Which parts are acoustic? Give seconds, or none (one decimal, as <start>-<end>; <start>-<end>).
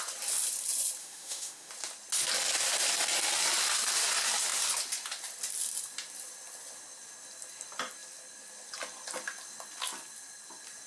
0.0-1.0; 1.7-10.9